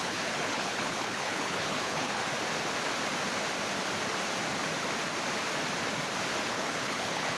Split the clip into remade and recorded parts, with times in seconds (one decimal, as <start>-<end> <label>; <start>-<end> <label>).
0.0-2.2 remade; 2.2-6.5 recorded; 6.5-7.4 remade